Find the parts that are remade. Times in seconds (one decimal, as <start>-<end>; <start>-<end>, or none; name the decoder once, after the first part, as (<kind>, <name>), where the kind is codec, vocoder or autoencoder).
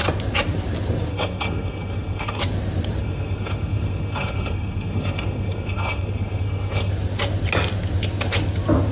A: 1.1-2.4 (codec, SNAC); 3.0-6.9